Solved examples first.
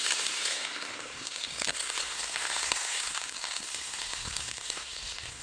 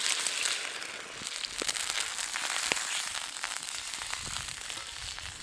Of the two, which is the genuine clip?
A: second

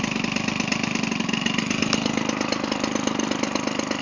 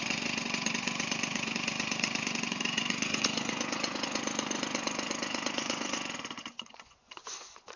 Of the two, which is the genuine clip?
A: first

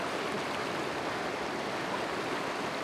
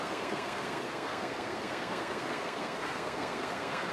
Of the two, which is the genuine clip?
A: first